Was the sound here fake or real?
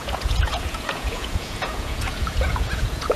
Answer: fake